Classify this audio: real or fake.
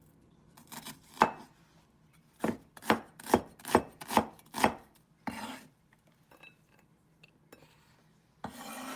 real